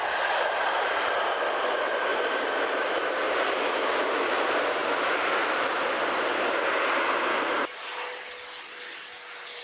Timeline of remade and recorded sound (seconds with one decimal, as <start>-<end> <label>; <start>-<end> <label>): 0.0-9.6 recorded